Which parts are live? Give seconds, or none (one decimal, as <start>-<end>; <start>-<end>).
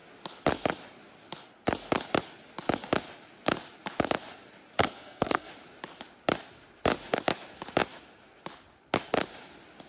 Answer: 0.0-4.8; 5.5-9.9